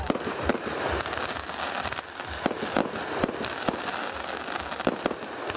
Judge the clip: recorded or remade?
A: recorded